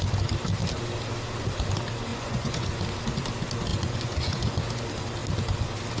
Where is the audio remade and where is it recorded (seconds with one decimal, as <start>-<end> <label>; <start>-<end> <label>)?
0.0-2.1 recorded; 2.1-2.8 remade; 2.8-3.7 recorded; 3.7-4.7 remade; 4.7-6.0 recorded